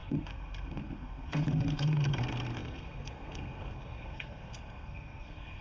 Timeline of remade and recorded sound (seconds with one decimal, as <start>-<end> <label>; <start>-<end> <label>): 0.0-5.6 remade